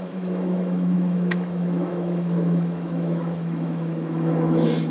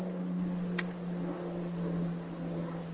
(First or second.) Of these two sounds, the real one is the second